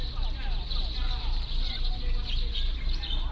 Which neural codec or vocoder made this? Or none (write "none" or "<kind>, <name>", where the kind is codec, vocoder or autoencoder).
none